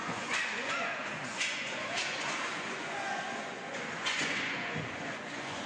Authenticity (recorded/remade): remade